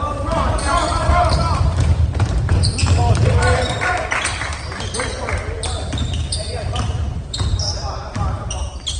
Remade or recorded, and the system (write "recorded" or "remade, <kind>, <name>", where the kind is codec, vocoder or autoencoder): remade, vocoder, BigVGAN v2